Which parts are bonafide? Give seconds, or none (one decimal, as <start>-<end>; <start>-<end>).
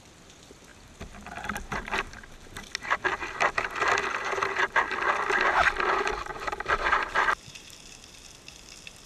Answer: 0.0-6.3; 7.8-9.1